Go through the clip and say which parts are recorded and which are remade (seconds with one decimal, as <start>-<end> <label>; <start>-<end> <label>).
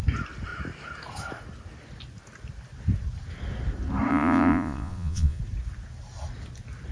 0.0-4.1 recorded; 4.1-5.4 remade; 5.4-6.9 recorded